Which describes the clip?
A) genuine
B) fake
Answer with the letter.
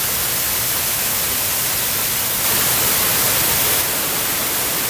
A